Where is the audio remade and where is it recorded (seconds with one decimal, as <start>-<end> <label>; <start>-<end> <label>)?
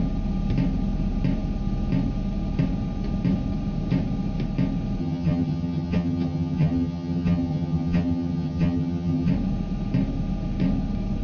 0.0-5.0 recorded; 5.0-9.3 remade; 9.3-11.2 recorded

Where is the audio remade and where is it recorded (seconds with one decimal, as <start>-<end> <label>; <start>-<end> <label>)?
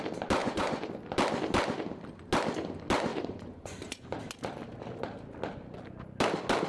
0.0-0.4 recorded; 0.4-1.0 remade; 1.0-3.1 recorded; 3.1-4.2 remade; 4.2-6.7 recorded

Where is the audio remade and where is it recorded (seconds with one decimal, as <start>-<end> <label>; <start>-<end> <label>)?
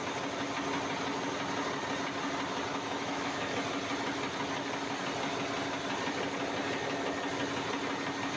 0.0-2.7 recorded; 2.7-3.5 remade; 3.5-8.4 recorded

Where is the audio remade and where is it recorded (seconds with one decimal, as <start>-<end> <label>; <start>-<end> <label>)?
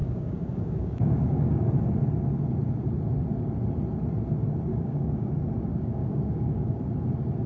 0.0-1.7 remade; 1.7-4.7 recorded; 4.7-5.3 remade; 5.3-5.7 recorded; 5.7-6.9 remade; 6.9-7.5 recorded